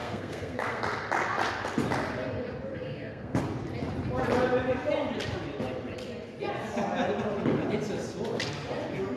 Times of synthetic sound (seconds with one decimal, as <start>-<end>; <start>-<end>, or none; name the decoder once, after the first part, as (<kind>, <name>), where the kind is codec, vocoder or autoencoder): 0.0-0.8 (codec, SNAC); 2.7-3.4